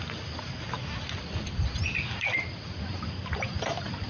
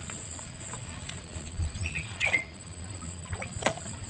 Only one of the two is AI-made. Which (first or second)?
second